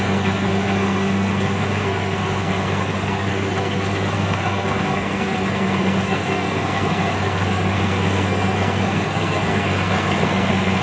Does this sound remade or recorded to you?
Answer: remade